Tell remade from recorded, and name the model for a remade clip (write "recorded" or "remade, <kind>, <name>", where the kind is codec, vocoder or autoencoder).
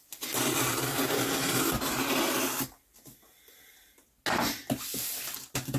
recorded